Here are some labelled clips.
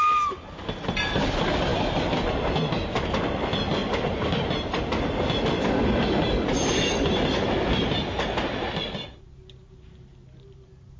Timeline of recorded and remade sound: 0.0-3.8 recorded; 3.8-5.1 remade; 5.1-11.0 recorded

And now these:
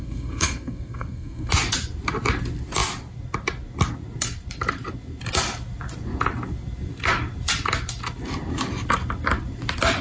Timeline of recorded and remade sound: 0.0-1.5 remade; 1.5-10.0 recorded